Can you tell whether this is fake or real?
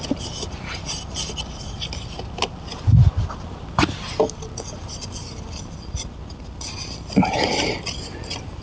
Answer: real